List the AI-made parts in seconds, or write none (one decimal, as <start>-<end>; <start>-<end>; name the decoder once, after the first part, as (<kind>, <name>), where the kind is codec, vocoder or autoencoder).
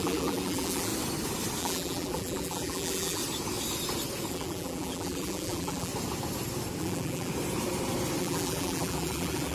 0.0-0.9 (vocoder, BigVGAN v2); 1.6-3.2; 4.3-5.9; 6.8-7.3; 8.2-9.5